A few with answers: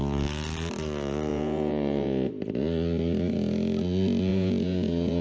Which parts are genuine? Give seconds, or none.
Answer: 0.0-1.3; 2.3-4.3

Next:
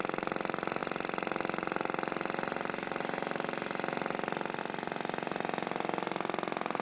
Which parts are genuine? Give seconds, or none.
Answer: 0.0-6.8

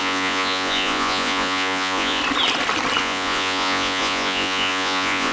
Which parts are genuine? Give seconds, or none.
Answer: 2.2-3.0

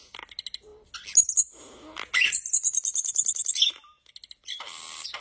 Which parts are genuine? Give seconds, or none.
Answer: 0.0-5.2

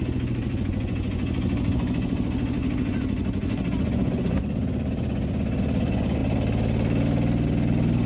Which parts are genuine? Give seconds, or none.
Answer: 6.2-8.1

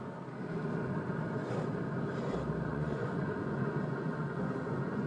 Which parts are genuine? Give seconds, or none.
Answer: 0.0-2.7

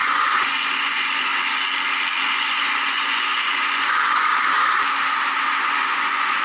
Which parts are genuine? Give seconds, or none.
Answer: 1.3-2.3; 4.3-5.6

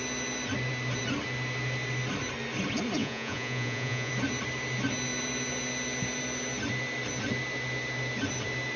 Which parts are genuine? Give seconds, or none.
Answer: 0.0-3.0; 4.1-8.8